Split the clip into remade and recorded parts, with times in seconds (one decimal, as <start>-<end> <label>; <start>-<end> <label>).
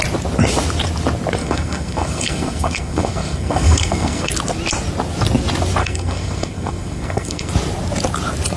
0.0-1.4 recorded; 1.4-4.3 remade; 4.3-5.8 recorded; 5.8-7.5 remade; 7.5-8.6 recorded